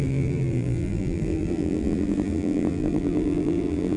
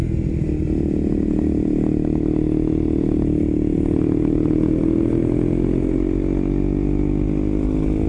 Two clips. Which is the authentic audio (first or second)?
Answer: second